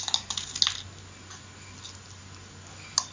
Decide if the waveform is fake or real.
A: real